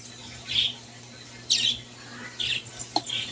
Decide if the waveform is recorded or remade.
recorded